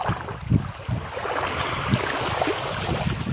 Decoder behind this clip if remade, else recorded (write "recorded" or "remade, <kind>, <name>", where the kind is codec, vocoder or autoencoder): recorded